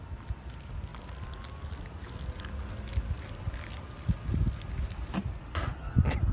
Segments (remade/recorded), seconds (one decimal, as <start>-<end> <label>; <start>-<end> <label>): 0.0-6.3 recorded